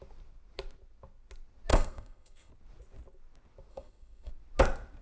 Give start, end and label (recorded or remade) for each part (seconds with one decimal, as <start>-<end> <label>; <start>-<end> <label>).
0.0-1.7 recorded; 1.7-2.5 remade; 2.5-3.7 recorded; 3.7-4.3 remade; 4.3-5.0 recorded